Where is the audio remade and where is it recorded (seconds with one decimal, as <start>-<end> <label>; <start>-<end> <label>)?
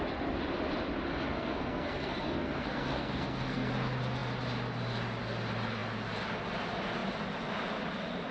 0.0-1.1 recorded; 1.1-3.7 remade; 3.7-8.3 recorded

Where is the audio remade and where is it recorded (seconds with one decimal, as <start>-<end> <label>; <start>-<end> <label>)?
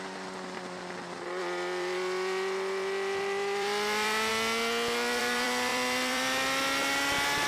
0.0-4.3 remade; 4.3-5.2 recorded; 5.2-7.5 remade